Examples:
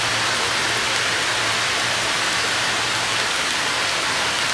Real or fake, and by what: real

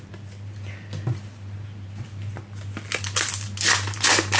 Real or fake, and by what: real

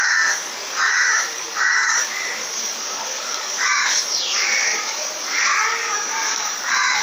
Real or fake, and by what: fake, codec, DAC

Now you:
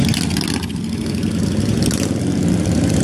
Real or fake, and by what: real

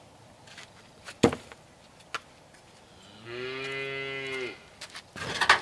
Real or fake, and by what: real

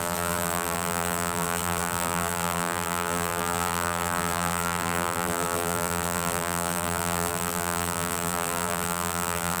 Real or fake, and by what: fake, vocoder, BigVGAN v2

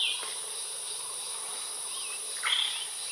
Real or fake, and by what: real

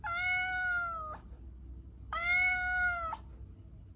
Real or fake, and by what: real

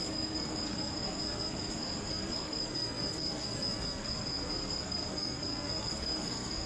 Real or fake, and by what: fake, codec, SNAC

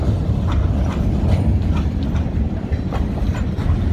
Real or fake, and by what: real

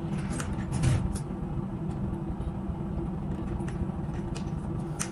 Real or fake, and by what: real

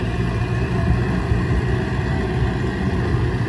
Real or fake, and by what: real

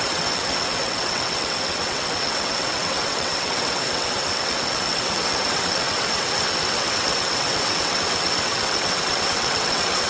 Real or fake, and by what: fake, vocoder, WaveNeXt